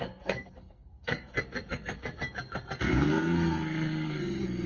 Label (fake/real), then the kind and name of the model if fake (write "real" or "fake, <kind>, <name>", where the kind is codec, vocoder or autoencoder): fake, codec, SNAC